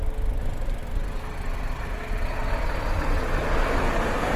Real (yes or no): yes